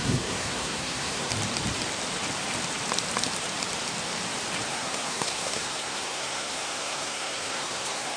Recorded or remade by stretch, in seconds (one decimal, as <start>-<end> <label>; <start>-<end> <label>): 0.0-1.3 remade; 1.3-4.7 recorded; 4.7-8.2 remade